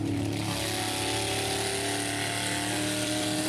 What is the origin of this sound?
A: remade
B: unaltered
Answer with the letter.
B